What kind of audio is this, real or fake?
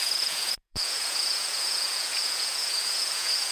fake